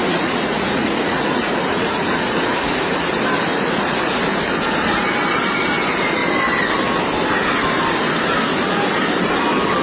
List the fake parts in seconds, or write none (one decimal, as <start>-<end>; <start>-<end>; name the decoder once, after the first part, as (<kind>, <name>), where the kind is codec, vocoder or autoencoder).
0.0-3.1 (vocoder, Vocos); 3.5-4.2